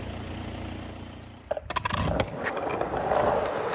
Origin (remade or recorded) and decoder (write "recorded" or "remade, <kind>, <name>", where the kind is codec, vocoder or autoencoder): recorded